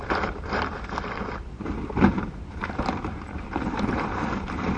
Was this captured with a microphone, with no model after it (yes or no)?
no